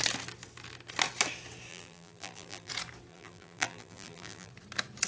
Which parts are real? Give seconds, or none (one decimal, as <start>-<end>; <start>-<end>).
0.0-1.7; 2.7-3.1; 4.5-5.1